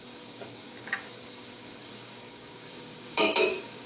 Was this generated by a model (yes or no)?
yes